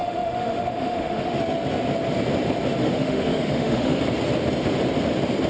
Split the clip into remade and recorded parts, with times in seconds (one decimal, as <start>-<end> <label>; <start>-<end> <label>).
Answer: 0.0-1.4 remade; 1.4-2.8 recorded; 2.8-4.0 remade; 4.0-5.5 recorded